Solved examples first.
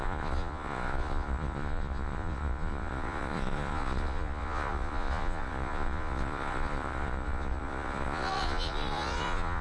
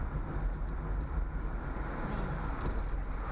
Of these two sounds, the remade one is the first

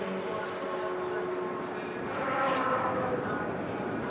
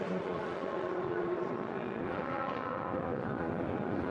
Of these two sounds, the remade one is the second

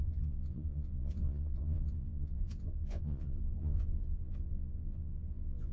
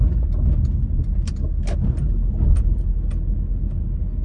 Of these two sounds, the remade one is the first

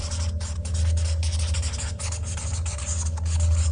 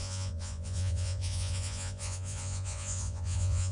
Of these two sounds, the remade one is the second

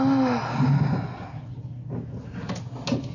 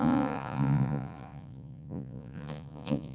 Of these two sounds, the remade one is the second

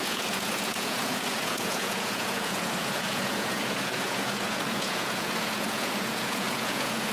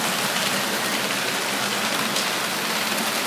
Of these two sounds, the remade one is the first